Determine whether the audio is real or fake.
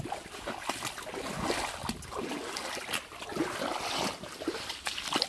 real